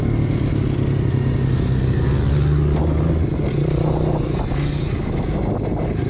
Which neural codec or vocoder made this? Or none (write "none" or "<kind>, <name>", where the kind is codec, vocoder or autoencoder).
none